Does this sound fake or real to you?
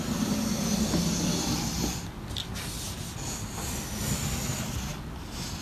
real